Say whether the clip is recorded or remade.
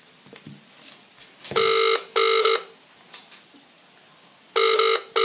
recorded